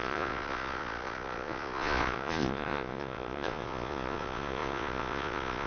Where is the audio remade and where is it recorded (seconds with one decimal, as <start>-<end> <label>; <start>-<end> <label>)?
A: 0.0-5.7 remade